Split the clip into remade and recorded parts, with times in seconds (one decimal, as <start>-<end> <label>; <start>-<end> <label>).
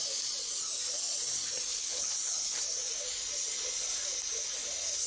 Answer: 0.0-1.7 recorded; 1.7-2.6 remade; 2.6-5.1 recorded